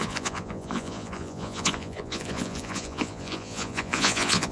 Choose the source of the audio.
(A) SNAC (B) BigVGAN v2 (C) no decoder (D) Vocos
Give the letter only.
D